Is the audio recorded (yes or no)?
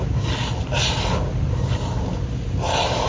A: yes